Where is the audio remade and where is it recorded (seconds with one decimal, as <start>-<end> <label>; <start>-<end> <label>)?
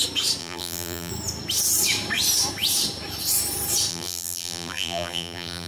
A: 0.0-0.4 recorded; 0.4-1.1 remade; 1.1-3.9 recorded; 3.9-5.7 remade